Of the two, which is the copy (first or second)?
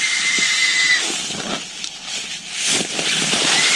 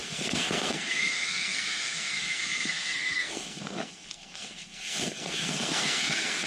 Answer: second